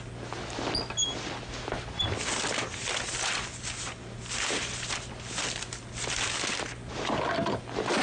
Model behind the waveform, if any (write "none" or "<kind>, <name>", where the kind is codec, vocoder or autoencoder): none